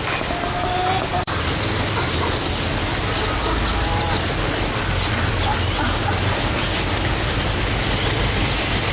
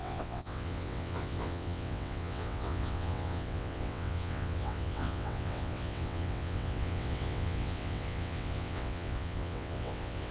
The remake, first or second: second